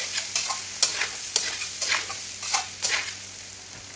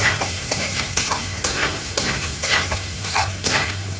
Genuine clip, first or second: first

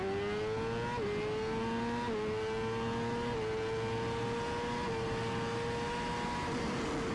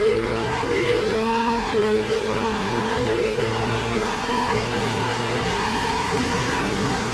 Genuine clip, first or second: first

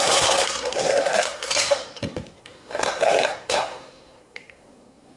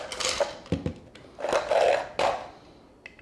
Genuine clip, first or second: second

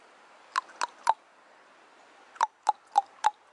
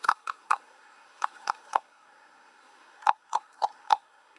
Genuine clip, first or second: first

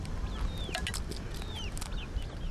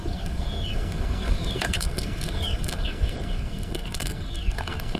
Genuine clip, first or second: first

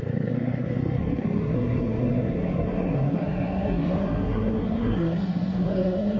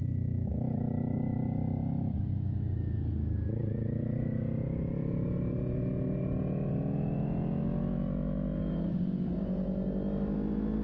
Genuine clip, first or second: second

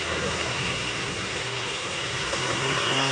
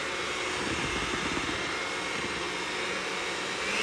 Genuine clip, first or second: second